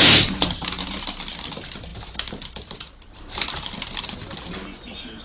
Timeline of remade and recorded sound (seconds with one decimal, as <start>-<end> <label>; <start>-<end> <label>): 0.0-1.9 recorded; 1.9-4.0 remade; 4.0-5.2 recorded